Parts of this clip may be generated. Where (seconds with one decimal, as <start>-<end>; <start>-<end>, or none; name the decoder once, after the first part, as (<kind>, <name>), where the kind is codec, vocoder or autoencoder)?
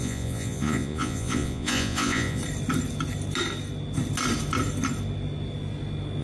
0.0-2.4 (vocoder, Vocos)